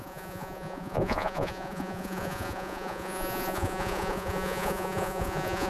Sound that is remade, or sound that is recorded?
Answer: remade